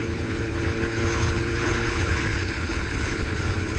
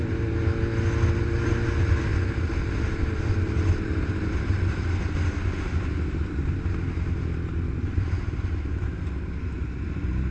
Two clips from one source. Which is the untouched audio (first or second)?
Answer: second